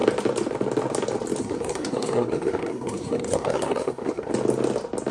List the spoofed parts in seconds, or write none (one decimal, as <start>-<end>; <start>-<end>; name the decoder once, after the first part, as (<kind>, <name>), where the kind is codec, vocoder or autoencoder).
1.4-4.3 (codec, SNAC)